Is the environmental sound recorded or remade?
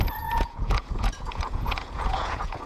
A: remade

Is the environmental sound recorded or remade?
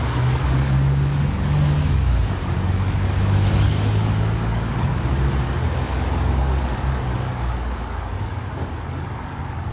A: remade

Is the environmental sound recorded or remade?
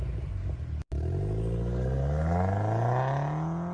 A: recorded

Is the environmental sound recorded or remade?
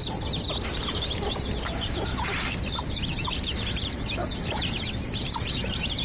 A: remade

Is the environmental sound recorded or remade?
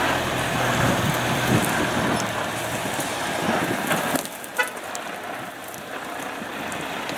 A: recorded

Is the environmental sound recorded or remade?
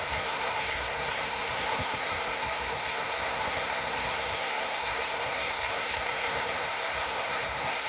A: remade